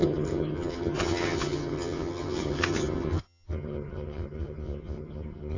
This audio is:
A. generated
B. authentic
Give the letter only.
A